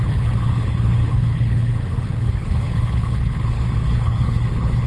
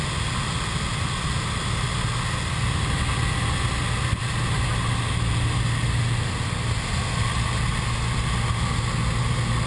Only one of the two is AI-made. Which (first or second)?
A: first